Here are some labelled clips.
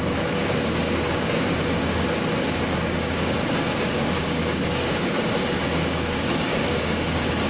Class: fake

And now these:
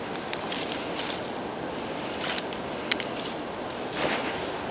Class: real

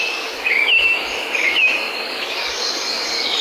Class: fake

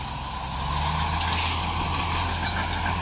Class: real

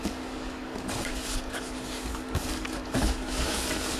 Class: fake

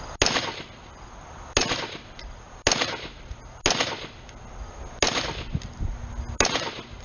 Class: real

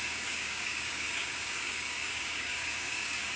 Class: fake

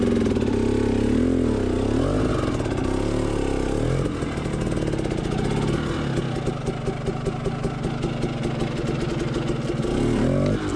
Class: real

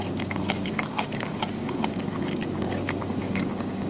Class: fake